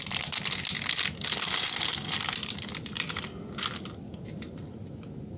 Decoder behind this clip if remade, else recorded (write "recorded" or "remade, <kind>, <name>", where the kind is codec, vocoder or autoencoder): recorded